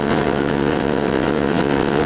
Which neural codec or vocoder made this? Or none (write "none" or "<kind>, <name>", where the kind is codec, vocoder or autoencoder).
vocoder, WaveNeXt